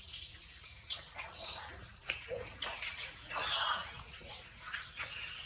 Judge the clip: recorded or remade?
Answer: remade